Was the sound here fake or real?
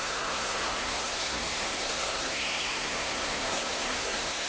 fake